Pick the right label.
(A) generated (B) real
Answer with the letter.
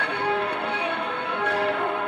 A